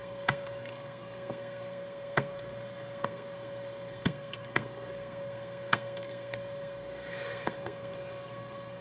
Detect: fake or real fake